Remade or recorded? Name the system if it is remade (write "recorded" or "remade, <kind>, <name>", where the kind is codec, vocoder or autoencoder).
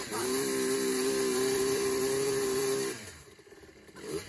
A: remade, vocoder, BigVGAN v2